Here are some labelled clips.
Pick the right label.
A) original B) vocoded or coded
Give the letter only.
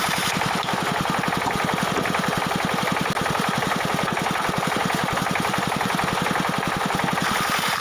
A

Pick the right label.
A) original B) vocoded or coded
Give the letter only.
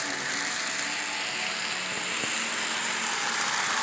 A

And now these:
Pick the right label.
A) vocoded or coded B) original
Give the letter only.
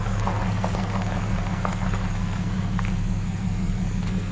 A